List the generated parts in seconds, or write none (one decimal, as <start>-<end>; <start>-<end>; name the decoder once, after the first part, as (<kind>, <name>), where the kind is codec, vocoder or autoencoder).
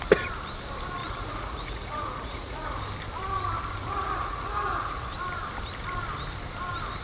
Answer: 1.0-2.8 (vocoder, Vocos); 3.8-5.1